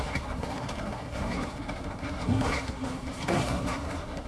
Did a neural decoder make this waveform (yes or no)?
yes